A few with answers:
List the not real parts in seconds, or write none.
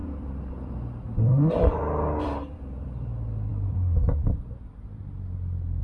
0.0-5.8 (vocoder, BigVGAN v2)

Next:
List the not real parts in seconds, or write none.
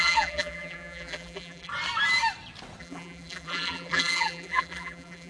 0.0-1.7 (vocoder, BigVGAN v2); 2.8-5.3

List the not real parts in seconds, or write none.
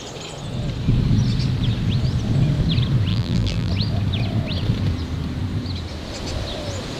3.1-3.7 (vocoder, BigVGAN v2)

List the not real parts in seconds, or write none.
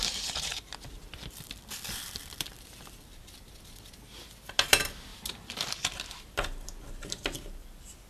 0.0-3.1 (vocoder, BigVGAN v2); 4.5-8.1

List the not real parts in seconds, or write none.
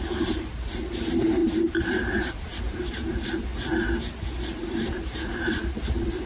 0.0-3.5 (vocoder, BigVGAN v2); 4.7-5.6